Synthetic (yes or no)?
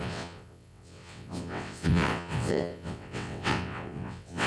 yes